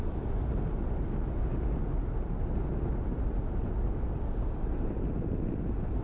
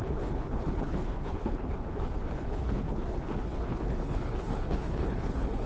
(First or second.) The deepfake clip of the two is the second